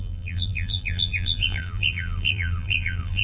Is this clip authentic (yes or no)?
no